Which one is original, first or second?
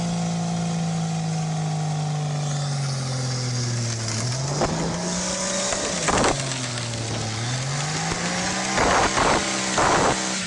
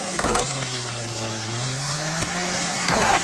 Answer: first